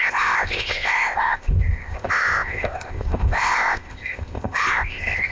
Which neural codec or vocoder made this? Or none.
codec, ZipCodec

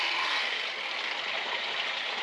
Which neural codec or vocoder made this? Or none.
none